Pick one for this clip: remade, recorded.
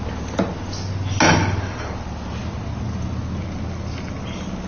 recorded